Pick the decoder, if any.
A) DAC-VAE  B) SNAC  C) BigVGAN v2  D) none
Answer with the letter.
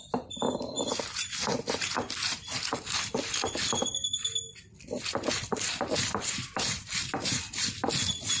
C